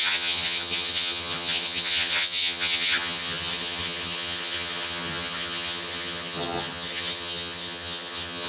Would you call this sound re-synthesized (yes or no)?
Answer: yes